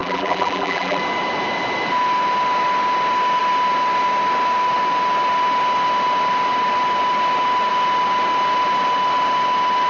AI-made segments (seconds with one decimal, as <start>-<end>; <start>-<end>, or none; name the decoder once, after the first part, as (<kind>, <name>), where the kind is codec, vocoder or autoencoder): 0.0-1.0 (vocoder, BigVGAN v2)

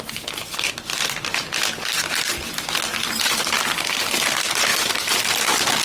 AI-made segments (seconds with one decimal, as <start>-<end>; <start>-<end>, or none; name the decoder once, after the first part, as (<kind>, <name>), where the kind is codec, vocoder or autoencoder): 4.7-5.2 (vocoder, BigVGAN v2)

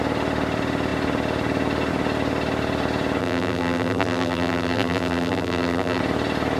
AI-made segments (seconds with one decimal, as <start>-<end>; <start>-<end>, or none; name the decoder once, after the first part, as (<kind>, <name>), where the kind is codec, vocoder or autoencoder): 3.2-6.0 (vocoder, BigVGAN v2)